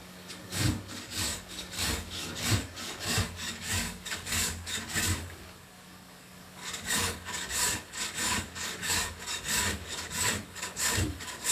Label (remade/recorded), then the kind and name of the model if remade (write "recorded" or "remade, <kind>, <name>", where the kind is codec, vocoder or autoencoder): remade, codec, DAC